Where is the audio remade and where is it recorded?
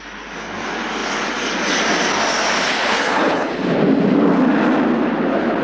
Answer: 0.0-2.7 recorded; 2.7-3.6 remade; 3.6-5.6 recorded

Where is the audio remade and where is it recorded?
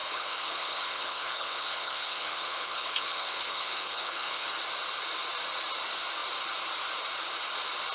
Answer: 0.0-4.5 remade; 4.5-7.9 recorded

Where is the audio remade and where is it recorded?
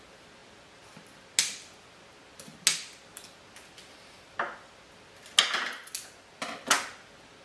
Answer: 0.0-7.4 recorded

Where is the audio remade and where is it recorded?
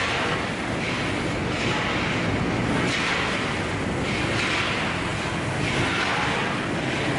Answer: 0.0-7.2 recorded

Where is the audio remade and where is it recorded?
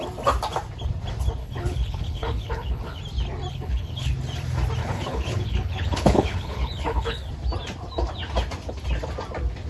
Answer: 0.0-1.4 recorded; 1.4-3.0 remade; 3.0-3.5 recorded; 3.5-4.1 remade; 4.1-4.8 recorded; 4.8-7.3 remade; 7.3-9.7 recorded